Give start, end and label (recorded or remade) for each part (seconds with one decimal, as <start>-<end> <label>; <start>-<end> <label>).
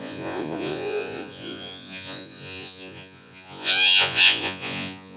0.0-5.2 remade